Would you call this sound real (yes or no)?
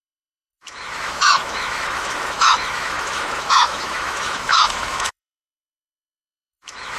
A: no